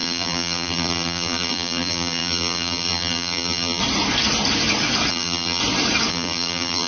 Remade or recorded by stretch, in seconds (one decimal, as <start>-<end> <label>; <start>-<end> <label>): 0.0-3.8 remade; 3.8-5.1 recorded; 5.1-5.6 remade; 5.6-6.1 recorded; 6.1-6.9 remade